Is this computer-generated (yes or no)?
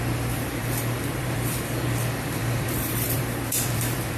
yes